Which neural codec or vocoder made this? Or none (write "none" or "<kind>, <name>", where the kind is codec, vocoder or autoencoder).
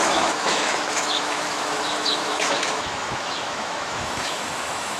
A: autoencoder, DAC-VAE